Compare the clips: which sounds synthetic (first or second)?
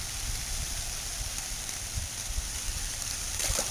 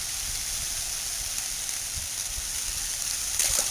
first